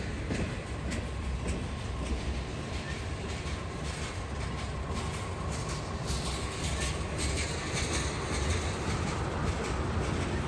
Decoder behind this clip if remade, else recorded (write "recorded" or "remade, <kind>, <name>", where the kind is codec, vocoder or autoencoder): recorded